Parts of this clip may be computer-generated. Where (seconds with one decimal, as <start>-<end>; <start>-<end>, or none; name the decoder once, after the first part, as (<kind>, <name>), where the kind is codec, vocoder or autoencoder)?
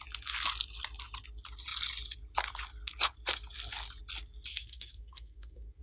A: 4.5-5.8 (codec, SNAC)